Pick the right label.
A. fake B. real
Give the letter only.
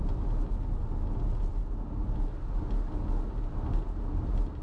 B